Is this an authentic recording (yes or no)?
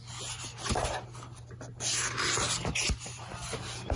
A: yes